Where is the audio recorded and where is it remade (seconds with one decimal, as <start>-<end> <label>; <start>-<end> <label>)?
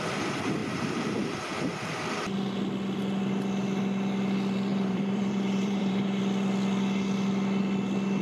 0.0-0.6 recorded; 0.6-1.9 remade; 1.9-4.7 recorded; 4.7-6.2 remade; 6.2-8.2 recorded